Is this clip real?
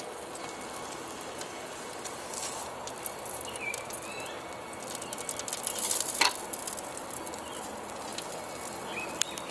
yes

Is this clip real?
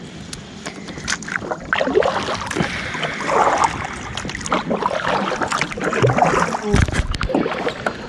yes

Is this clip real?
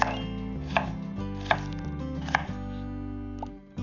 yes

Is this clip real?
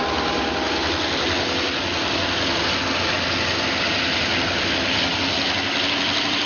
yes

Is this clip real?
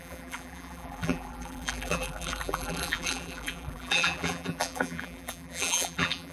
no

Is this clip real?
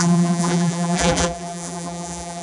no